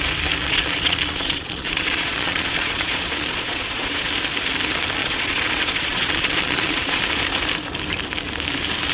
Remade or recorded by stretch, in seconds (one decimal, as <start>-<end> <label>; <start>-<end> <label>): 0.0-0.4 recorded; 0.4-4.1 remade; 4.1-5.0 recorded; 5.0-7.0 remade; 7.0-8.9 recorded